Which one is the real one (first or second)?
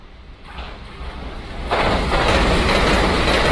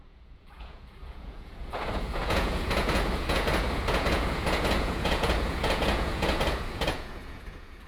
first